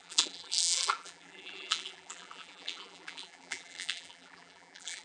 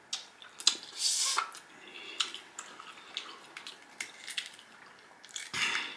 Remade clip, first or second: first